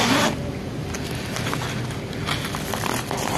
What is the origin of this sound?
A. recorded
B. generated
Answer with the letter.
A